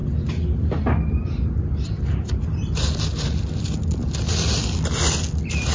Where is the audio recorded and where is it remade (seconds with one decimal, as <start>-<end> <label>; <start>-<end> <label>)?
0.0-5.7 recorded